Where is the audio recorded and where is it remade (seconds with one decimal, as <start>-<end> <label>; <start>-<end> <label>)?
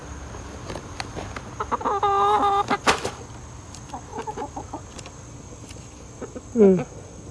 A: 0.0-4.1 recorded; 4.1-6.2 remade; 6.2-7.3 recorded